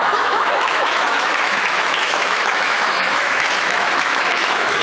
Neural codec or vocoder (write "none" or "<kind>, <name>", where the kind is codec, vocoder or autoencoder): autoencoder, DAC-VAE